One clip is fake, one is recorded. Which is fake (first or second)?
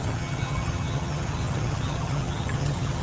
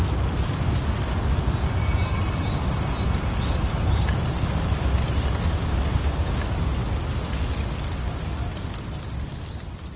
first